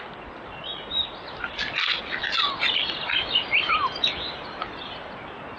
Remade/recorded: recorded